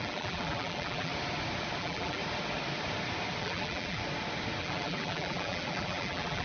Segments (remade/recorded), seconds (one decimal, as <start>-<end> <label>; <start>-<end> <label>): 0.0-1.1 remade; 1.1-1.8 recorded; 1.8-2.2 remade; 2.2-3.4 recorded; 3.4-4.0 remade; 4.0-4.6 recorded; 4.6-6.4 remade